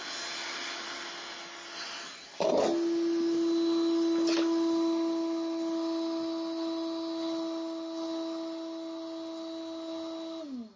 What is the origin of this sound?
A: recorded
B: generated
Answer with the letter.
A